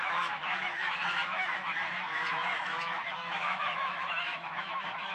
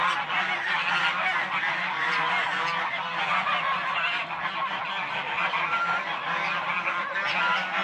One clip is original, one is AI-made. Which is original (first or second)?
second